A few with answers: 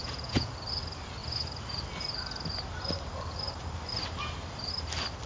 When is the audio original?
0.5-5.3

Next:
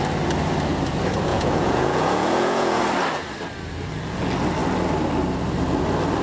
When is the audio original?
0.0-1.3; 2.8-6.2

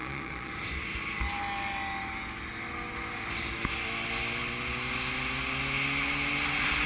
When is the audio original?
0.5-6.9